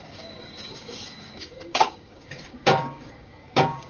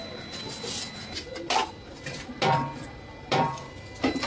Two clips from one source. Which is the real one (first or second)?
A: second